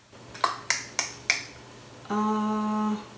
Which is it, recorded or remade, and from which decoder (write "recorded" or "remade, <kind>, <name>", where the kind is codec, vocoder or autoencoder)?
recorded